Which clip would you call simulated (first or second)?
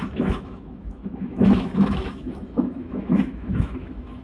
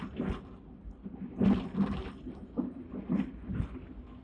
first